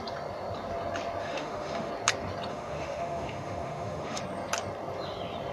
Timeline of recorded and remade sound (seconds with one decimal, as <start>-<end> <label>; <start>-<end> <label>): 0.0-1.2 recorded; 1.2-1.9 remade; 1.9-2.5 recorded; 2.5-4.2 remade; 4.2-5.5 recorded